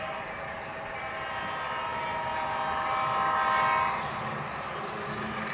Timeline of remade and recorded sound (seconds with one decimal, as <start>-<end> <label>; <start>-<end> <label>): 0.0-5.5 recorded